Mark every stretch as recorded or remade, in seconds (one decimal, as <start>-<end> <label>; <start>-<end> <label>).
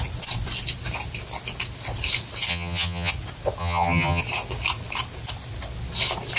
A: 0.0-2.5 recorded; 2.5-3.1 remade; 3.1-3.6 recorded; 3.6-4.2 remade; 4.2-6.4 recorded